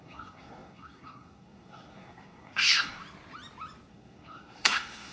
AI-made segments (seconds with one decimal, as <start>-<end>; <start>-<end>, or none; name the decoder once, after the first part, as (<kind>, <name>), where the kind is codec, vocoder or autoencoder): 0.0-3.0 (codec, SNAC); 3.9-5.1

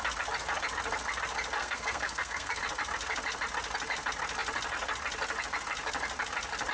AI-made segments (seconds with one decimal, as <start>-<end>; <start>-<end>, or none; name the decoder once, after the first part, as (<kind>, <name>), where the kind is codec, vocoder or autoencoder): 1.6-2.6 (codec, SNAC)

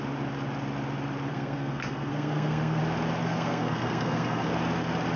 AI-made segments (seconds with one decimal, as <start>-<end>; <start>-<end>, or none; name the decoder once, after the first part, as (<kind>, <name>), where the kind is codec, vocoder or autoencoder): 1.3-2.8 (codec, SNAC); 3.2-4.5

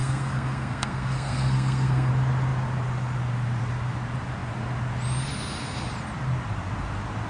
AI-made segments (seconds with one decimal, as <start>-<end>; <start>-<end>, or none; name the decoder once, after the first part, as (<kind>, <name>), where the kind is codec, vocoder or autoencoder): 0.0-2.1 (codec, SNAC)

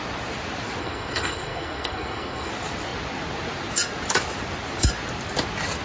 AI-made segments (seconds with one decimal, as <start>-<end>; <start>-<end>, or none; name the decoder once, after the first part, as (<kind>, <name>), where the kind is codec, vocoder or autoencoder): 0.8-2.5 (codec, SNAC)

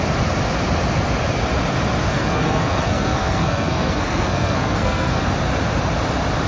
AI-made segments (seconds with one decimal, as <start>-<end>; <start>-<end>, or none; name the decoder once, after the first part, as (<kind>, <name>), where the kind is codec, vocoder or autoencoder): 2.1-5.2 (codec, SNAC)

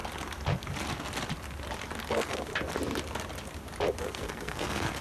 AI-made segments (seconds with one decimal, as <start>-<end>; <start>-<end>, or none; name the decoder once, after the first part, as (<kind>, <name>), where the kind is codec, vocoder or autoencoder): 2.1-2.5 (codec, SNAC); 4.0-5.0